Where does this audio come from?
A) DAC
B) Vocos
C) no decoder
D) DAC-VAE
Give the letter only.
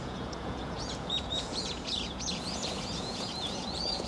B